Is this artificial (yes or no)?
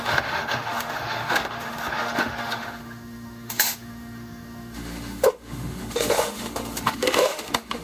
yes